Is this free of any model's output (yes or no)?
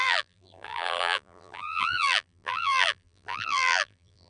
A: no